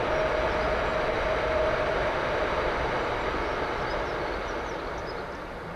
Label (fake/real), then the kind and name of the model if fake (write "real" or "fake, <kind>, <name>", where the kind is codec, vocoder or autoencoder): real